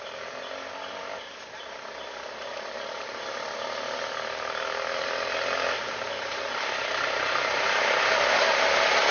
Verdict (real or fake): real